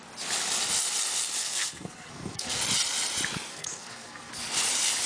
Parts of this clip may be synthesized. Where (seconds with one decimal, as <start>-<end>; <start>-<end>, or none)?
1.4-2.6; 3.5-4.3